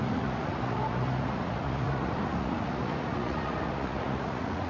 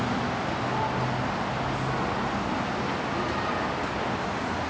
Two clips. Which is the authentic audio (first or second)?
second